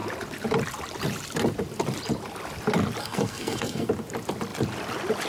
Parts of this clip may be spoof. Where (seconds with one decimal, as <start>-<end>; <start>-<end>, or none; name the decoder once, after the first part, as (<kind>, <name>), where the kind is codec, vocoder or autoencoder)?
3.0-3.9 (codec, SNAC)